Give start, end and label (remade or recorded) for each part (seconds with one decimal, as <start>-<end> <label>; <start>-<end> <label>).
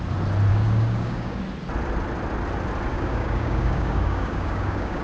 0.0-0.5 recorded; 0.5-1.4 remade; 1.4-2.9 recorded; 2.9-5.0 remade